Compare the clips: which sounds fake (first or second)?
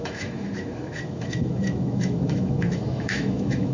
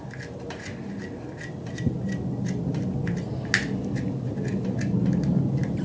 first